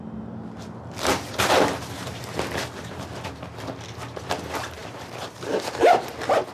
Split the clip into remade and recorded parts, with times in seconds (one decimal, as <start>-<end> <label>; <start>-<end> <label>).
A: 0.0-4.8 recorded; 4.8-6.1 remade; 6.1-6.5 recorded